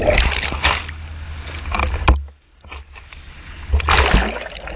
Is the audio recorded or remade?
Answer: recorded